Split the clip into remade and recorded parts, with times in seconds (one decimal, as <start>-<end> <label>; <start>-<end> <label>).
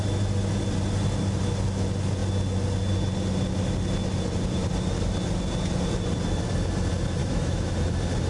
0.0-7.2 recorded; 7.2-7.7 remade; 7.7-8.3 recorded